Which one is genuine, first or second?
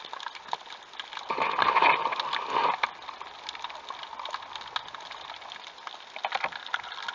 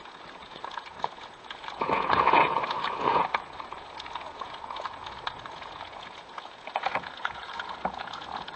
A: first